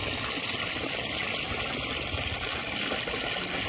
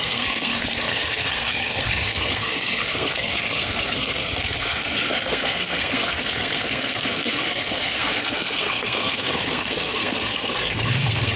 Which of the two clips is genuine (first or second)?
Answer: first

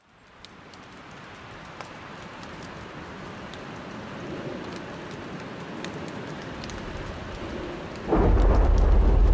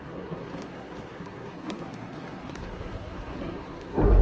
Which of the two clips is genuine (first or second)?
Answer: first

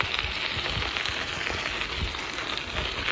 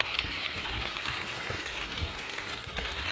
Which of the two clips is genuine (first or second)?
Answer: first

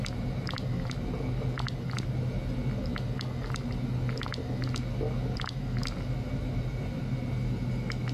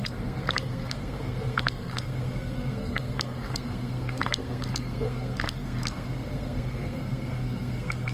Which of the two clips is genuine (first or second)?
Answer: first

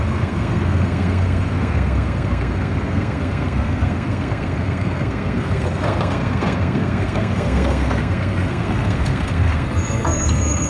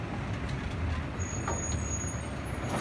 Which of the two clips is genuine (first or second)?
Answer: second